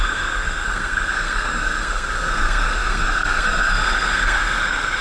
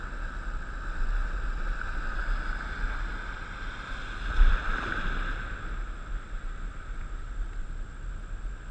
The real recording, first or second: second